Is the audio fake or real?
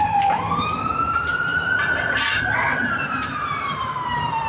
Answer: fake